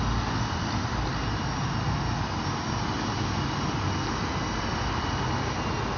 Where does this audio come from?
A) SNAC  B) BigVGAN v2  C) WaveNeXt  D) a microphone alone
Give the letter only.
D